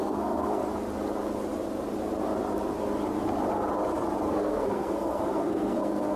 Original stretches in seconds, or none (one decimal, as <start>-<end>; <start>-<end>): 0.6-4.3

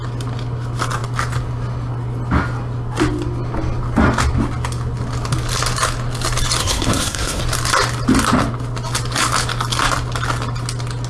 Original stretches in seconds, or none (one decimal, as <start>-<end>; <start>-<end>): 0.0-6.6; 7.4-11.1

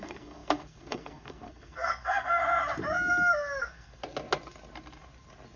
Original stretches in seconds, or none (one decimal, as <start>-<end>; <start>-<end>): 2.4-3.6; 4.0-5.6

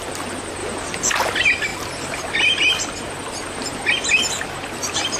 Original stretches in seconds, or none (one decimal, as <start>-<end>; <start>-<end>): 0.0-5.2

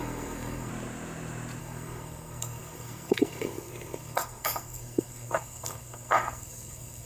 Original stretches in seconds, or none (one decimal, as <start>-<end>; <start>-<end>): 0.7-1.6

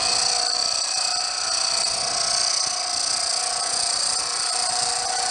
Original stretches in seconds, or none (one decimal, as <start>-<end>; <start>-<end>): 0.0-5.3